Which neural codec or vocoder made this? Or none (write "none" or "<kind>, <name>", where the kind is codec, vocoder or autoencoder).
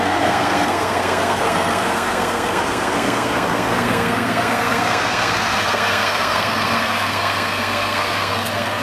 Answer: codec, SNAC